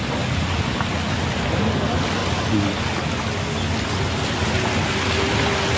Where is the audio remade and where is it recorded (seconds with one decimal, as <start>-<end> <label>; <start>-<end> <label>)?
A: 0.0-5.8 recorded